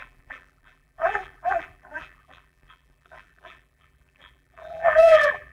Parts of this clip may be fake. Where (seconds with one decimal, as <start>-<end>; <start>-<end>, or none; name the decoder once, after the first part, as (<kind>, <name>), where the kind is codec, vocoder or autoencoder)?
0.0-5.5 (vocoder, BigVGAN v2)